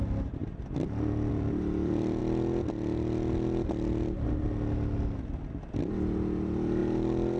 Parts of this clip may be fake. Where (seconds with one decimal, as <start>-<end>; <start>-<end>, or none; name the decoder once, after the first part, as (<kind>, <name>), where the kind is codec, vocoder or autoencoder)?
0.0-2.2 (vocoder, BigVGAN v2); 5.9-7.4